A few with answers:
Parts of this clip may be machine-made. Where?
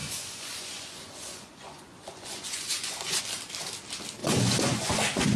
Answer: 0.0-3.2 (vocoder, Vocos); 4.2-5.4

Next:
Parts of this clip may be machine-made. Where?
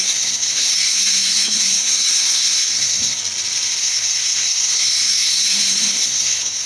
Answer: 0.0-3.2 (codec, SNAC); 3.8-6.7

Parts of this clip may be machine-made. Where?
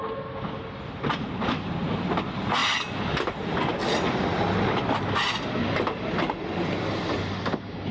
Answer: none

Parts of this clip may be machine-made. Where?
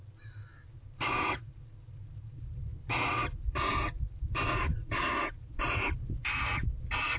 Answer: none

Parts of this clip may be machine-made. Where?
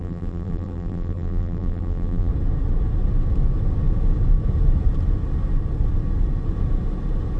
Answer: 0.0-2.3 (vocoder, BigVGAN v2)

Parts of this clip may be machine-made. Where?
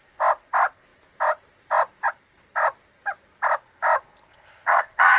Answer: 4.3-5.2 (vocoder, WaveNeXt)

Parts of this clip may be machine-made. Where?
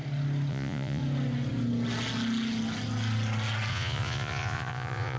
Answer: 0.5-1.0 (vocoder, Vocos); 3.7-5.2